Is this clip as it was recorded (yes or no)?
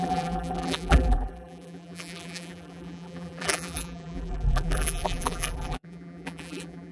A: no